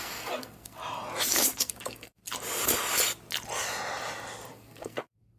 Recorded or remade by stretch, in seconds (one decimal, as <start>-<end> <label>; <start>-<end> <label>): 0.0-0.8 remade; 0.8-1.3 recorded; 1.3-2.2 remade; 2.2-4.5 recorded; 4.5-5.4 remade